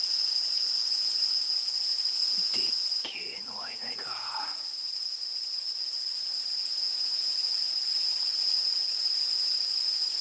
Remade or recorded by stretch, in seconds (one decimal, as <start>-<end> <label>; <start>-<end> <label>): 0.0-10.2 remade